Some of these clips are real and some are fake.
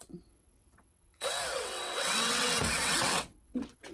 fake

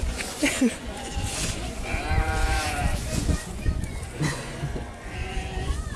fake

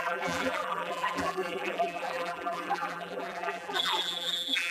fake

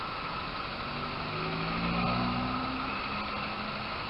real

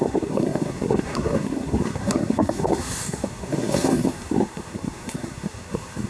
fake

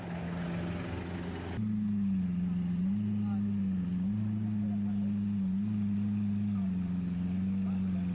real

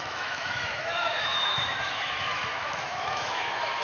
fake